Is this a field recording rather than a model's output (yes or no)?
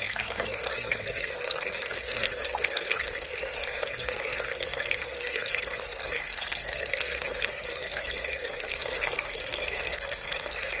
no